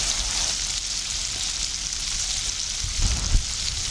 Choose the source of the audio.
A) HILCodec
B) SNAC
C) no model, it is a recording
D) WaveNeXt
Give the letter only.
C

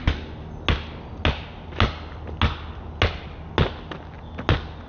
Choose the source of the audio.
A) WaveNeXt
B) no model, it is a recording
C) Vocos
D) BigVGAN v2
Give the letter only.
B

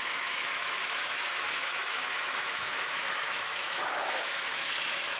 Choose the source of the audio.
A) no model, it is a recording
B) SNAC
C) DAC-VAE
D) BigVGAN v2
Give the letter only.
C